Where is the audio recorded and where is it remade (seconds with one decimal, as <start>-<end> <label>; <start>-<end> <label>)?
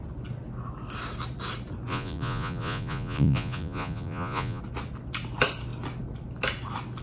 0.0-1.9 recorded; 1.9-4.6 remade; 4.6-7.0 recorded